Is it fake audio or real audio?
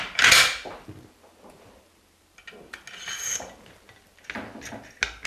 real